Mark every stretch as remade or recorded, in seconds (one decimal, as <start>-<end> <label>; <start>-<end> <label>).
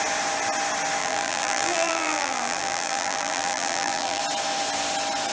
0.0-1.0 recorded; 1.0-4.2 remade; 4.2-5.3 recorded